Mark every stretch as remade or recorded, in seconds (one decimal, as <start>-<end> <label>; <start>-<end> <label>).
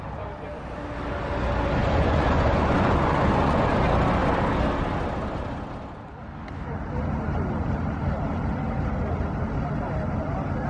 0.0-1.8 recorded; 1.8-3.7 remade; 3.7-10.7 recorded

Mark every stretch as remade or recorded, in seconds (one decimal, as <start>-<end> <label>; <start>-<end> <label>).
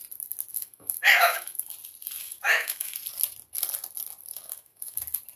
0.0-0.5 recorded; 0.5-1.6 remade; 1.6-2.2 recorded; 2.2-2.9 remade; 2.9-4.3 recorded; 4.3-5.0 remade; 5.0-5.4 recorded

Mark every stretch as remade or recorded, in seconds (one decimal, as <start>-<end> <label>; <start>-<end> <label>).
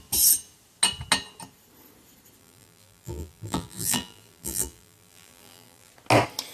0.0-2.4 recorded; 2.4-5.9 remade; 5.9-6.5 recorded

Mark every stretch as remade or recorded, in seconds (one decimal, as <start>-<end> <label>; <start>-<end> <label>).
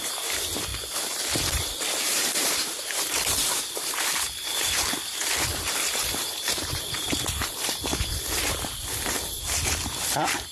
0.0-10.5 remade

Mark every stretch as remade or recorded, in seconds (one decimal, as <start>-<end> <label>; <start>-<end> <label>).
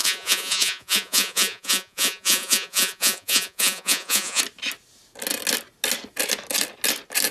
0.0-4.4 remade; 4.4-7.3 recorded